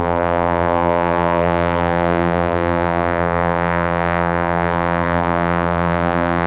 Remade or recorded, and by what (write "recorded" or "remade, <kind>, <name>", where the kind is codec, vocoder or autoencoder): remade, vocoder, BigVGAN v2